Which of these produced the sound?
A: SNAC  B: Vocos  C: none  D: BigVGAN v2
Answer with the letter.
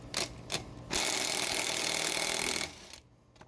C